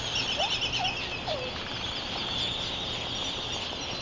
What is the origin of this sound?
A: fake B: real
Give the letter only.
B